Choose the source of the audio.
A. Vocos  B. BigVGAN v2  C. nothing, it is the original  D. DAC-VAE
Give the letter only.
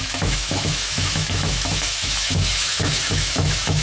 D